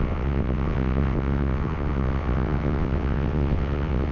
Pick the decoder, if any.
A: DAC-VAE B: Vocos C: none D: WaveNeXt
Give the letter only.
D